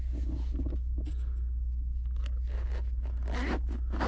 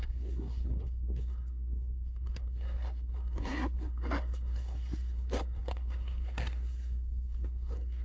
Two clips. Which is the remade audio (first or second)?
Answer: second